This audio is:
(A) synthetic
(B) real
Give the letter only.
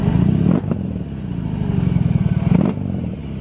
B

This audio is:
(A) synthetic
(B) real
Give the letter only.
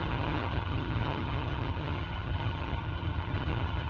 A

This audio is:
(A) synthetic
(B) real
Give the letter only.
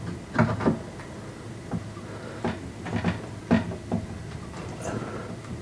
B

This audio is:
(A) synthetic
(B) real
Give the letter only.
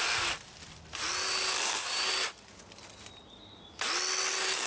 B